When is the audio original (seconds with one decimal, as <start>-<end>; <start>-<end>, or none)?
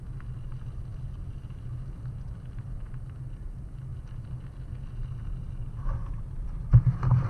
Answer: 0.0-7.3